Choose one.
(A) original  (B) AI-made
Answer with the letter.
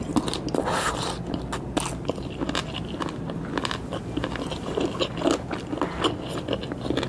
A